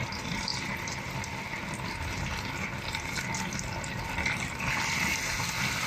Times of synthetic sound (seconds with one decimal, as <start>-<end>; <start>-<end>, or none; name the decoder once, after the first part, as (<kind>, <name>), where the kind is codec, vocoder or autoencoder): none